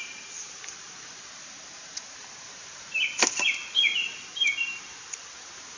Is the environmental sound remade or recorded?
remade